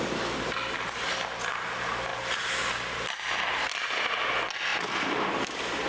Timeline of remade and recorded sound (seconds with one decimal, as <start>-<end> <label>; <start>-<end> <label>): 0.0-5.9 recorded

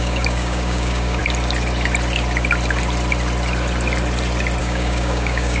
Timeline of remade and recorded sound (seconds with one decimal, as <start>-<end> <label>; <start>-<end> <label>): 0.0-1.2 remade; 1.2-4.6 recorded; 4.6-5.6 remade

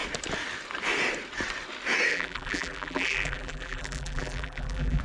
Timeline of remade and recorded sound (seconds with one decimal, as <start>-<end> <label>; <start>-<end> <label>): 0.0-2.1 recorded; 2.1-5.0 remade

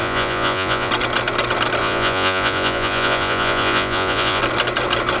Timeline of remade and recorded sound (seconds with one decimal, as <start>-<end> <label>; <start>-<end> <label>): 0.0-0.9 remade; 0.9-1.8 recorded; 1.8-4.4 remade; 4.4-5.2 recorded

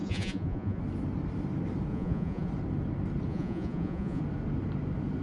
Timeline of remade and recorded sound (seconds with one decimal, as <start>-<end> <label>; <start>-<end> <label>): 0.0-0.8 remade; 0.8-1.9 recorded; 1.9-2.5 remade; 2.5-3.3 recorded; 3.3-4.2 remade; 4.2-5.2 recorded

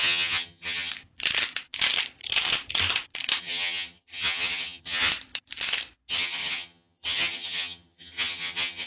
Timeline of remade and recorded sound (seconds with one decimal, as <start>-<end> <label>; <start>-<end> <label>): 0.0-0.9 remade; 0.9-3.4 recorded; 3.4-5.1 remade; 5.1-6.1 recorded; 6.1-8.9 remade

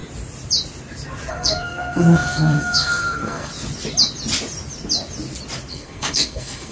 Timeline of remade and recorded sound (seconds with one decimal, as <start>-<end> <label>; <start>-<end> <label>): 0.0-1.3 recorded; 1.3-3.5 remade; 3.5-5.7 recorded; 5.7-6.7 remade

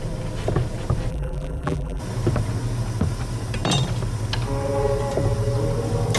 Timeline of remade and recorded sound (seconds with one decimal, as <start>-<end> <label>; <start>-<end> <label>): 0.0-1.1 recorded; 1.1-2.0 remade; 2.0-6.2 recorded